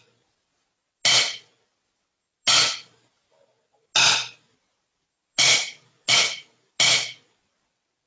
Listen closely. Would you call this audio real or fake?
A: real